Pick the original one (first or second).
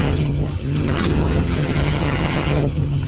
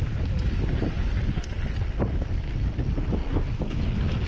second